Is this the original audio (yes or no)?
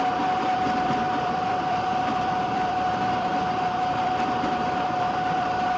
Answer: no